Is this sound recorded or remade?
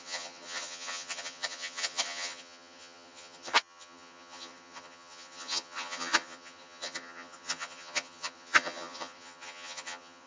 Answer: remade